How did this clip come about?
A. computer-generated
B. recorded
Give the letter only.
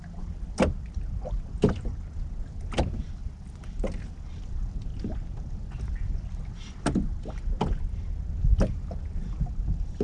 B